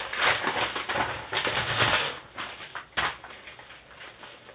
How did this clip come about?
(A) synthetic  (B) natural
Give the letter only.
B